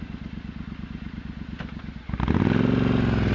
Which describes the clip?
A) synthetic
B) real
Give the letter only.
B